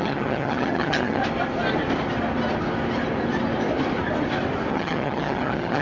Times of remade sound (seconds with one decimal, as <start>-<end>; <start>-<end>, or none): 0.0-1.2; 4.7-5.8